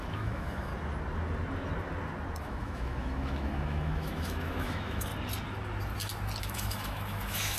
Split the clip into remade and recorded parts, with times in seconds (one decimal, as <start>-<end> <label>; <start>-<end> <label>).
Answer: 0.0-0.7 remade; 0.7-2.4 recorded; 2.4-5.1 remade; 5.1-6.4 recorded; 6.4-7.6 remade

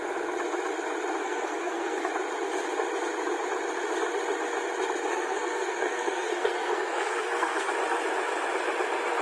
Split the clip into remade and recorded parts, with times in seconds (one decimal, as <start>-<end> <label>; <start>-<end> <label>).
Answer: 0.0-1.2 recorded; 1.2-2.1 remade; 2.1-5.1 recorded; 5.1-7.7 remade; 7.7-9.2 recorded